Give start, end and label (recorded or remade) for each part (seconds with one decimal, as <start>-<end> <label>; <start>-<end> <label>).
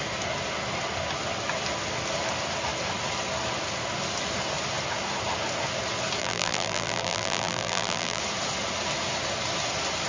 0.0-6.2 recorded; 6.2-8.2 remade; 8.2-10.1 recorded